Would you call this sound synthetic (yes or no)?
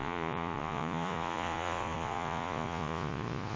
yes